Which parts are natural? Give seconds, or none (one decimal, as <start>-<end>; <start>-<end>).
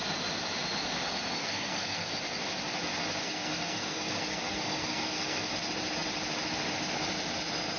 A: 0.0-1.4; 2.1-3.2; 5.5-7.8